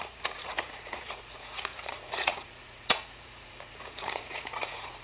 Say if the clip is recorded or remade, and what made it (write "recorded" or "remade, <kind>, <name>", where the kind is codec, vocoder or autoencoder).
remade, vocoder, Vocos